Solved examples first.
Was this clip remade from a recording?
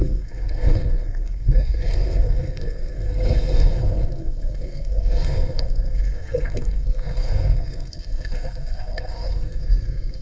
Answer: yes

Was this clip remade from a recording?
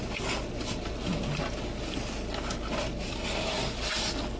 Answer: no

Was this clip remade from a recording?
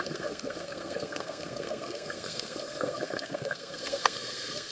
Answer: yes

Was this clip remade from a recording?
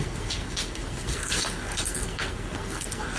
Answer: yes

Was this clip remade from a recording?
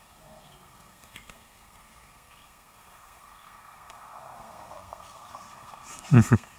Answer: yes